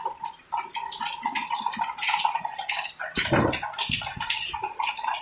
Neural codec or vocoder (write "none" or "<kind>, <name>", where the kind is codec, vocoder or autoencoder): none